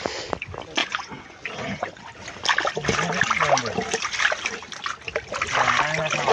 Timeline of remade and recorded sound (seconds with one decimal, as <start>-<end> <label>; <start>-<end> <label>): 0.0-0.8 recorded; 0.8-2.0 remade; 2.0-6.3 recorded